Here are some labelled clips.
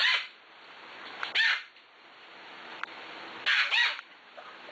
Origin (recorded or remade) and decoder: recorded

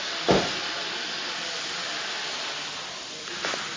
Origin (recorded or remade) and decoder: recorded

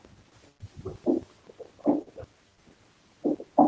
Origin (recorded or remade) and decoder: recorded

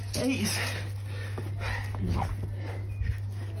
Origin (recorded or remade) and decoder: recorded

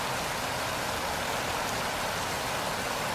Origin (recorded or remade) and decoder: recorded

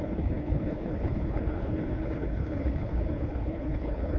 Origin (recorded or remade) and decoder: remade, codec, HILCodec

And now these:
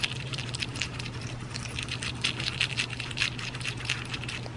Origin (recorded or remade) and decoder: recorded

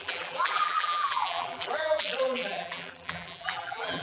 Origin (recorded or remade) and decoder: remade, vocoder, BigVGAN v2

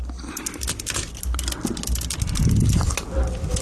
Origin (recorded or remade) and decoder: recorded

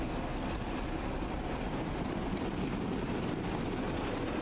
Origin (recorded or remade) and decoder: recorded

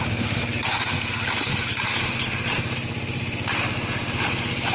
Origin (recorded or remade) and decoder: recorded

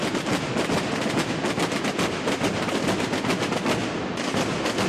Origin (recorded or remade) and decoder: recorded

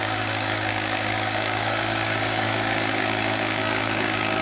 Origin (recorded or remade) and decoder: remade, codec, DAC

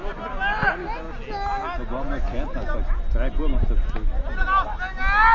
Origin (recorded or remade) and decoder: recorded